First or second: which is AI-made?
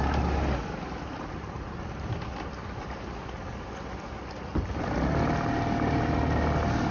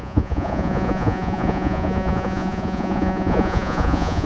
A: second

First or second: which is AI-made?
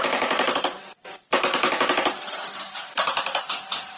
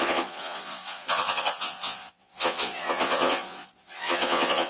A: second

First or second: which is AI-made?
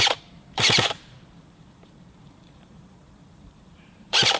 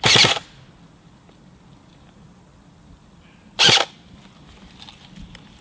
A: first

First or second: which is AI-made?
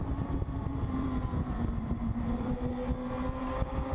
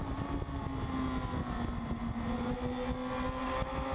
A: first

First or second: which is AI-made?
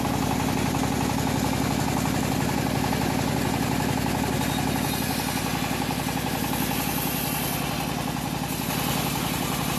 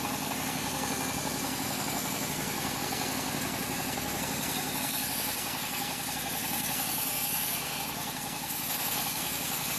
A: second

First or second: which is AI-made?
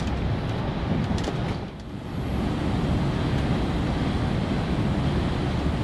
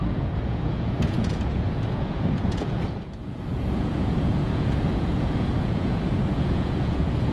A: second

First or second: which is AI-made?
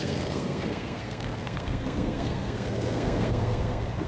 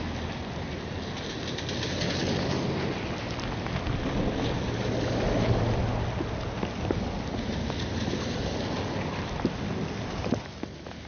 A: first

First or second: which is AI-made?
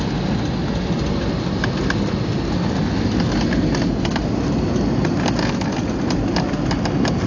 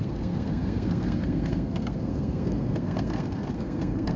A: second